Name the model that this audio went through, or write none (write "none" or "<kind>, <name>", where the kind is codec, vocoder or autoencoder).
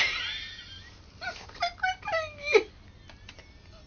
none